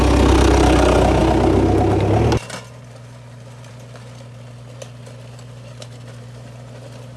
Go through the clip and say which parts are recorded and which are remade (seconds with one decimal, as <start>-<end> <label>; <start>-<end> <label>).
0.0-7.2 recorded